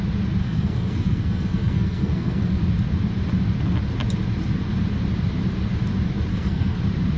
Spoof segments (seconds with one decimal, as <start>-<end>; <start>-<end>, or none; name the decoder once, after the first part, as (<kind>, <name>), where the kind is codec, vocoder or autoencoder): 0.4-2.6 (codec, SNAC); 6.3-6.8